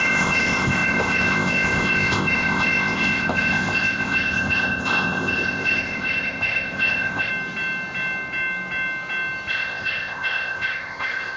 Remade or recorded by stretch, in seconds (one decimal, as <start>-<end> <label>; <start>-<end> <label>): 0.0-7.3 remade; 7.3-9.5 recorded; 9.5-11.4 remade